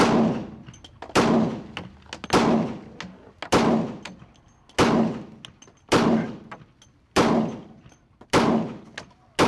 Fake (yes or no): no